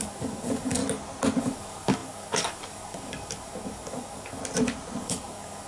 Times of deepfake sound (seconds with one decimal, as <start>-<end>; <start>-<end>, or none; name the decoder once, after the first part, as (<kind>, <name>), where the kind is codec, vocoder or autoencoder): 0.0-0.8 (codec, DAC); 1.4-4.4; 5.0-5.7